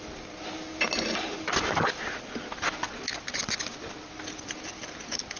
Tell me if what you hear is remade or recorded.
recorded